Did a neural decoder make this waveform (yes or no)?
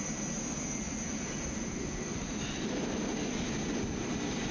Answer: no